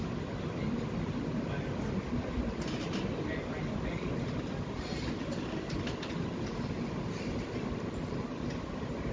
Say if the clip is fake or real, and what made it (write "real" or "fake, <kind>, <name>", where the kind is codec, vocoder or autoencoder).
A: real